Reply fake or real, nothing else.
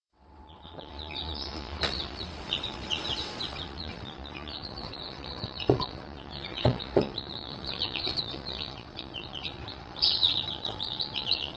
fake